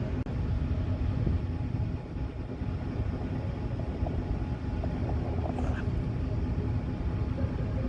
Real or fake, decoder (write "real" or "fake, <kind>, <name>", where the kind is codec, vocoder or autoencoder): real